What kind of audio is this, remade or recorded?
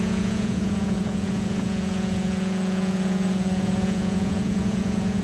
remade